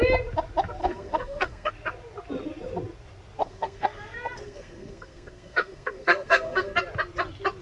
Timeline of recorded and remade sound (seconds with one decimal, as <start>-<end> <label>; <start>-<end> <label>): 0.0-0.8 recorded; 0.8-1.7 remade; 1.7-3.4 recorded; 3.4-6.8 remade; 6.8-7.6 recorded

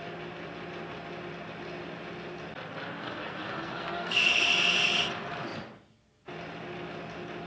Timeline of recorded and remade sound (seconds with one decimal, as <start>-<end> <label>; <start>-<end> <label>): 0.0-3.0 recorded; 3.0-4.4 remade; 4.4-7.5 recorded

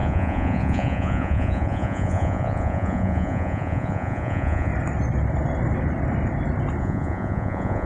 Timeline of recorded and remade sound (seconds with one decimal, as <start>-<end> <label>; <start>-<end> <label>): 0.0-4.7 remade; 4.7-6.8 recorded; 6.8-7.9 remade

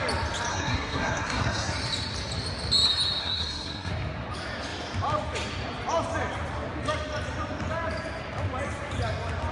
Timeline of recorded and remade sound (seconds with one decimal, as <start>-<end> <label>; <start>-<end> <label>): 0.0-0.5 recorded; 0.5-1.7 remade; 1.7-3.2 recorded; 3.2-3.9 remade; 3.9-9.5 recorded